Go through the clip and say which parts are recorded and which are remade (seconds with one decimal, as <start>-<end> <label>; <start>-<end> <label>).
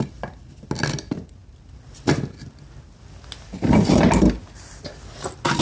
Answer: 0.0-5.6 recorded